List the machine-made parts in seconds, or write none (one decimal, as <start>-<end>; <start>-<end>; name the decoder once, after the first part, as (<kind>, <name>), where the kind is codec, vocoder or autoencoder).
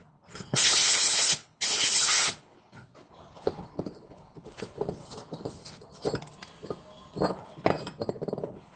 0.0-5.9 (codec, HILCodec); 7.3-7.7; 8.4-8.8